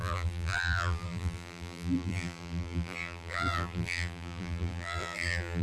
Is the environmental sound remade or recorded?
remade